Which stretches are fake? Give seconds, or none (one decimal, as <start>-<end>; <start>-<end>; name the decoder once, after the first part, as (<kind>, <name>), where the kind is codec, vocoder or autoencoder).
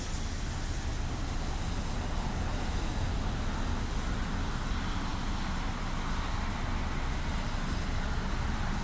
none